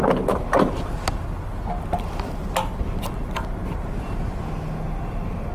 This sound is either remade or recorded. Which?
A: recorded